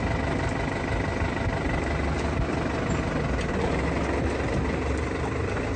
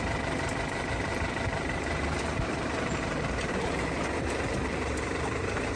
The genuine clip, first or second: first